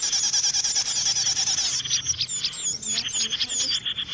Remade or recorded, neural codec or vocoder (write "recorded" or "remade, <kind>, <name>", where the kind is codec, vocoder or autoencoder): recorded